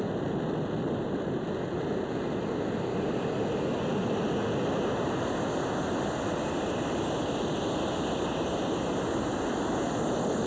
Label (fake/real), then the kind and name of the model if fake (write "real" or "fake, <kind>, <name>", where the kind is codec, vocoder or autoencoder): real